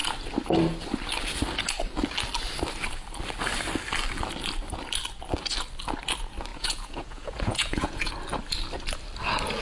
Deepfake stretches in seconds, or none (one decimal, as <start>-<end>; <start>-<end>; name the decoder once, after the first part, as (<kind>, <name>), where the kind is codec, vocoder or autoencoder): 6.5-8.1 (vocoder, Vocos)